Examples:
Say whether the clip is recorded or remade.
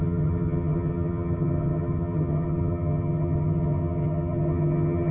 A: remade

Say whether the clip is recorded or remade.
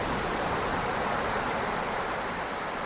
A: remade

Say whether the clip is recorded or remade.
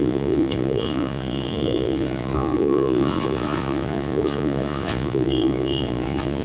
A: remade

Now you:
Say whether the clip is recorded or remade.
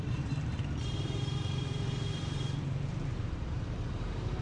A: remade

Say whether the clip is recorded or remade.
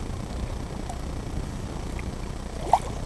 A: recorded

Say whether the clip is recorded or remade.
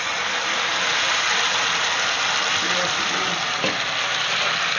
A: recorded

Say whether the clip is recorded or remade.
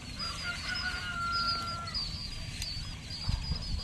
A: recorded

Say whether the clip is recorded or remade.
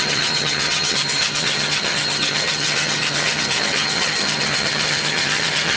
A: remade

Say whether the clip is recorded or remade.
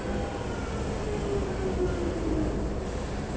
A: recorded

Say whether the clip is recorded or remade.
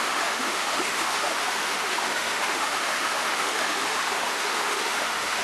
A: remade